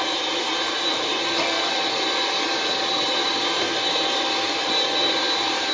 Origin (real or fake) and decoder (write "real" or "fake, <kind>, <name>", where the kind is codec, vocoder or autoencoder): fake, vocoder, BigVGAN v2